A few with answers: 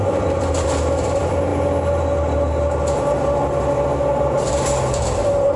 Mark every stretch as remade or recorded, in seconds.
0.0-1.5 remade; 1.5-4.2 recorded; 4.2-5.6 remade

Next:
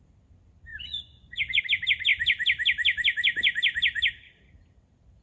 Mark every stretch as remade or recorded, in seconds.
0.0-0.7 recorded; 0.7-1.6 remade; 1.6-5.2 recorded